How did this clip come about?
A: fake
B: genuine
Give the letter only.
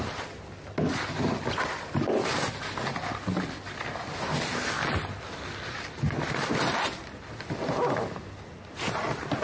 B